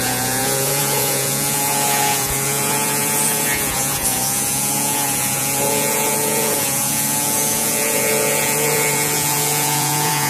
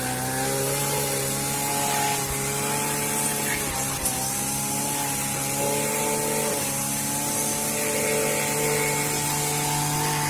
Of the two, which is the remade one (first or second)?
first